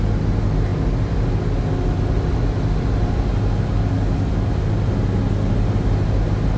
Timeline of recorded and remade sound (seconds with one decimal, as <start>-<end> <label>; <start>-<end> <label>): 0.0-6.6 recorded